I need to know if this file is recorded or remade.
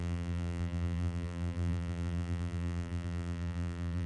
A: remade